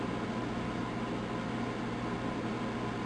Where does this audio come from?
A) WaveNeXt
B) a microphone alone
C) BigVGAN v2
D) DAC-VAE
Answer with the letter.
B